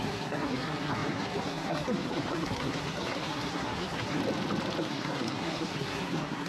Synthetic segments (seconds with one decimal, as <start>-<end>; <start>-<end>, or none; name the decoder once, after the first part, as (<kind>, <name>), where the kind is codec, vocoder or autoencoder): 0.0-4.2 (codec, SNAC); 4.8-6.5

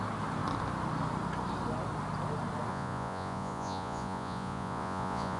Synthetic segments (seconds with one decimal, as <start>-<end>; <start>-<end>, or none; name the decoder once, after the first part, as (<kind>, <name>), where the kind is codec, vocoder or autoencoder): 2.7-5.4 (vocoder, Vocos)

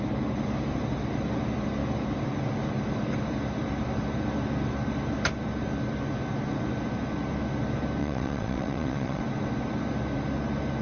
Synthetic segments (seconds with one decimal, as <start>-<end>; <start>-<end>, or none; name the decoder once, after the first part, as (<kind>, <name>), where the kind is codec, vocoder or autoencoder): 8.0-9.2 (vocoder, WaveNeXt)

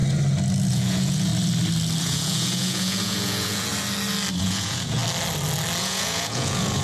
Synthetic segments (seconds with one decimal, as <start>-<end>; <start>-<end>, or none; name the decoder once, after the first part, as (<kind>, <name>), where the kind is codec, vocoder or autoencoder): 0.7-1.3 (vocoder, Vocos); 2.0-3.7; 4.4-5.0; 5.8-6.8

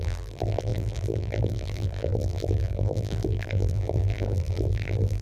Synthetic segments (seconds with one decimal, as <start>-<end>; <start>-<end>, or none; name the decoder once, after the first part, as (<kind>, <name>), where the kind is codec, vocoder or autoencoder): 0.0-5.2 (vocoder, BigVGAN v2)

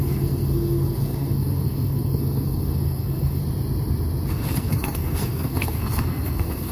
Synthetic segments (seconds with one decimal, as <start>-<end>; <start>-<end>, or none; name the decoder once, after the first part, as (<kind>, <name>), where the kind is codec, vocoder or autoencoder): 0.0-3.4 (codec, SNAC); 4.3-6.7